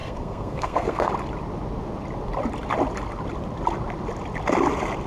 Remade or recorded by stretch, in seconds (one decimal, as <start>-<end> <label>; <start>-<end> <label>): 0.0-1.1 remade; 1.1-5.1 recorded